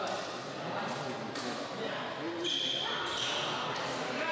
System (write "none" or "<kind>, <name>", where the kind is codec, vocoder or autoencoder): none